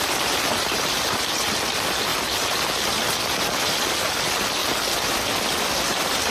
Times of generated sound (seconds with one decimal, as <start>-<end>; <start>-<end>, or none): none